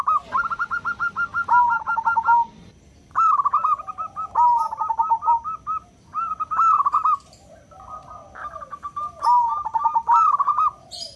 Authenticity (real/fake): real